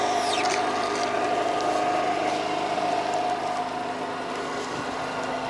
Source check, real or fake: real